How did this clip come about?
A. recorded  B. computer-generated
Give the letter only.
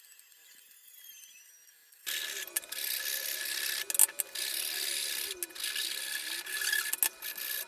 A